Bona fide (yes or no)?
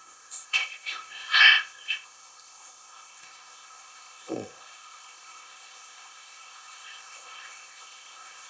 no